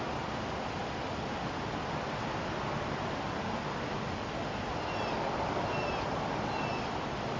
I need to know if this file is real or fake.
real